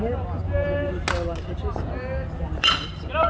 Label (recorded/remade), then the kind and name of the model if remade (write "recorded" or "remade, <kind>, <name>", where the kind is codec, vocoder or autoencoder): recorded